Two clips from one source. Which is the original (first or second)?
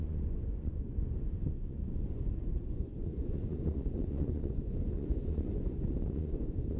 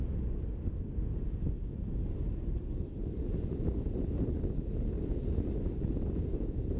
second